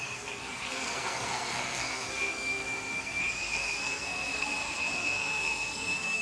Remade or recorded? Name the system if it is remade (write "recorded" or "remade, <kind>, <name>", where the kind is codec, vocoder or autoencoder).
remade, codec, SNAC